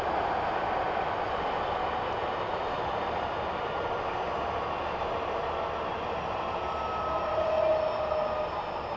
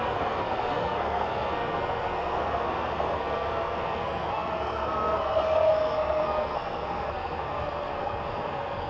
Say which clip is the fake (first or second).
second